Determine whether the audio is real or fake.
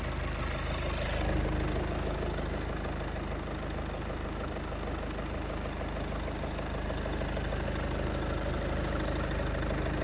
real